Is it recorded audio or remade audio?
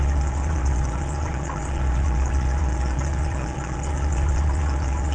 remade